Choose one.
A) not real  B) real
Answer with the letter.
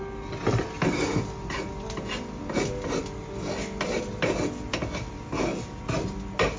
B